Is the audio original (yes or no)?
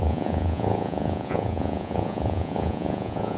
no